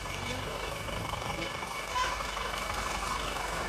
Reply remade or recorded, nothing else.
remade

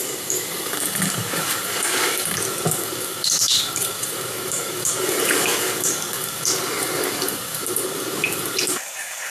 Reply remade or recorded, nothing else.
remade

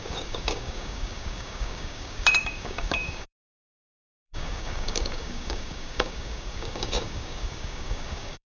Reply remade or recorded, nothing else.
remade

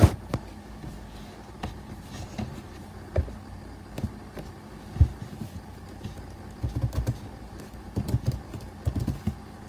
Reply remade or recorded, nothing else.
recorded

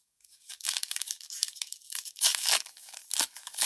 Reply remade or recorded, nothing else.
remade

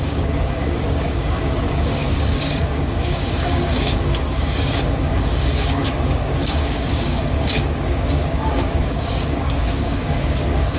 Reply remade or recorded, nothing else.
remade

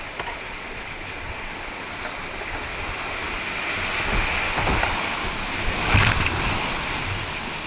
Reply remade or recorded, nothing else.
recorded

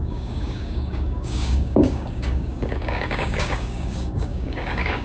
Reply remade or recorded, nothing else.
remade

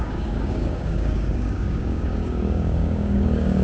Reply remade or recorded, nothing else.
remade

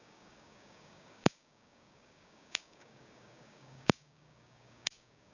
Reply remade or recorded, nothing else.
remade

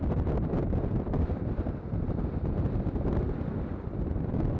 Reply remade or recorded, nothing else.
recorded